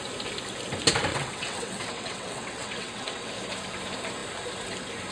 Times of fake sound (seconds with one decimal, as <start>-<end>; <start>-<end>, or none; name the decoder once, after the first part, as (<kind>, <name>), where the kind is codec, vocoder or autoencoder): 1.1-3.3 (vocoder, WaveNeXt)